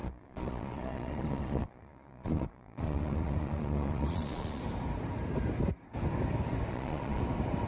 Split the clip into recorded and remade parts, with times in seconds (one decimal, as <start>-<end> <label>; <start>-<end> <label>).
0.0-4.6 remade; 4.6-6.7 recorded; 6.7-7.2 remade; 7.2-7.7 recorded